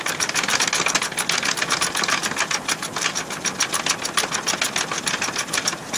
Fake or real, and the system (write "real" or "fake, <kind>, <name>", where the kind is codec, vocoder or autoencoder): real